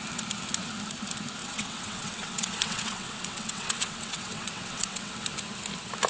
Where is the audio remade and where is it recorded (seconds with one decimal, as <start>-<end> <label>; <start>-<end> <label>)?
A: 0.0-1.4 recorded; 1.4-5.1 remade; 5.1-6.1 recorded